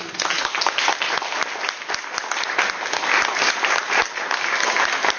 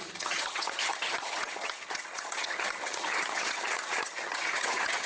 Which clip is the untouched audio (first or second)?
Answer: first